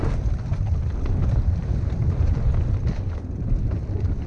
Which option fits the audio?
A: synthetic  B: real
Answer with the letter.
B